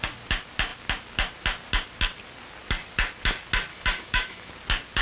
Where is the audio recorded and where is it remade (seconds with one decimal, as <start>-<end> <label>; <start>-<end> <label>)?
0.0-3.7 recorded; 3.7-4.5 remade; 4.5-5.0 recorded